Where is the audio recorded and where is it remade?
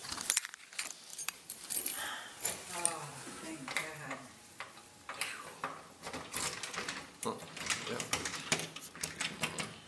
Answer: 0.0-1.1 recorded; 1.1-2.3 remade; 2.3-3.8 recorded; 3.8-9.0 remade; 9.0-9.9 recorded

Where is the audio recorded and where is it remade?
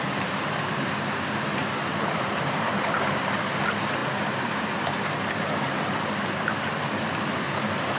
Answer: 0.0-8.0 remade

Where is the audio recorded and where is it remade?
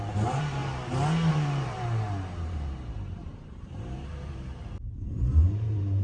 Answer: 0.0-0.6 remade; 0.6-1.3 recorded; 1.3-6.0 remade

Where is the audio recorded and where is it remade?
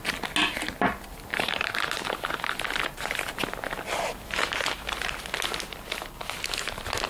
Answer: 0.0-1.3 recorded; 1.3-2.1 remade; 2.1-7.1 recorded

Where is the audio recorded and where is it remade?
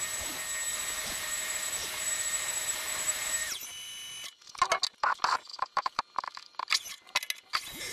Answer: 0.0-0.7 recorded; 0.7-3.7 remade; 3.7-5.5 recorded; 5.5-6.0 remade; 6.0-7.9 recorded